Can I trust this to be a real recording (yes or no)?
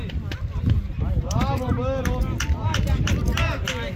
yes